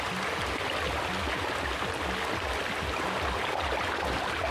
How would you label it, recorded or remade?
recorded